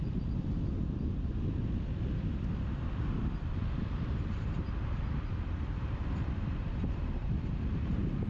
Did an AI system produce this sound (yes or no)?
no